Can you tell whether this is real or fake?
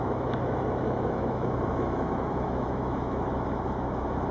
fake